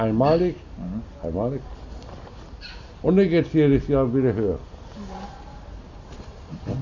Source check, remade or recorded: recorded